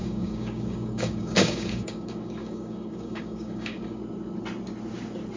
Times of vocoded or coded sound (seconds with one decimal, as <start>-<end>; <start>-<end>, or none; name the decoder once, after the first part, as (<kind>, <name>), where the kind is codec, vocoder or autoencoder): 0.0-4.0 (codec, DAC)